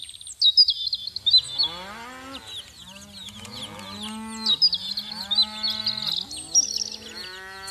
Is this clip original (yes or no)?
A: yes